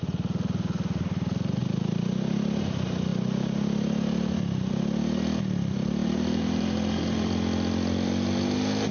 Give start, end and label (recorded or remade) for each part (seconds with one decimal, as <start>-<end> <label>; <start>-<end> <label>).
0.0-6.0 recorded; 6.0-7.3 remade; 7.3-8.9 recorded